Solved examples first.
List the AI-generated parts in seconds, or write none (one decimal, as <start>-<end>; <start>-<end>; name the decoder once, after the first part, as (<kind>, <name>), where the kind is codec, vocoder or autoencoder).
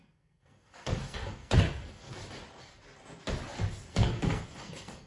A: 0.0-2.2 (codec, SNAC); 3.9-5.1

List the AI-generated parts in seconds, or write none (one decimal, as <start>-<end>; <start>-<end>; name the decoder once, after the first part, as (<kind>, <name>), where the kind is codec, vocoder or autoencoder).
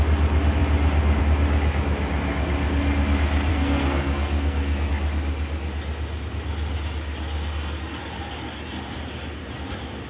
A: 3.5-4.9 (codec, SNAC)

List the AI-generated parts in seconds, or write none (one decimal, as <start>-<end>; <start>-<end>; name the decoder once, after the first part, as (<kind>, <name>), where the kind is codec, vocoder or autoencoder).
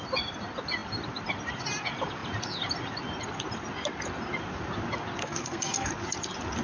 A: 5.2-5.9 (codec, SNAC)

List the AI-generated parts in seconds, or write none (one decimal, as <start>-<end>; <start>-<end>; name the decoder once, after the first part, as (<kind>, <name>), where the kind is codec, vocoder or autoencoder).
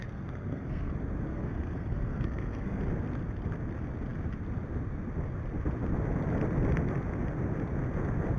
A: 0.0-0.9 (codec, SNAC); 1.3-2.8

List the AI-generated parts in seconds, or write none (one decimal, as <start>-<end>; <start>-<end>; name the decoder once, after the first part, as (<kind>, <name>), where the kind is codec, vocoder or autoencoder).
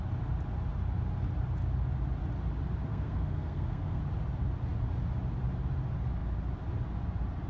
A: 2.9-4.0 (codec, SNAC)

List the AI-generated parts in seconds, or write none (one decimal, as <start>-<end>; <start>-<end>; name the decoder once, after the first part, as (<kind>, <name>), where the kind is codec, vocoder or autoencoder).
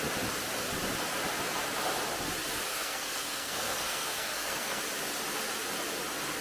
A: 2.7-4.8 (codec, SNAC)